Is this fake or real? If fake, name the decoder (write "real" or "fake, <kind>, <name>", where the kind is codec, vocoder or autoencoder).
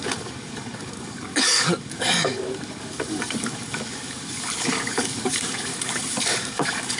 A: fake, codec, DAC